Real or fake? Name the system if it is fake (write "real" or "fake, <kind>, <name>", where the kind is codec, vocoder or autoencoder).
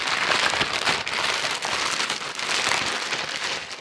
real